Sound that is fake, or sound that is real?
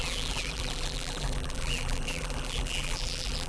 fake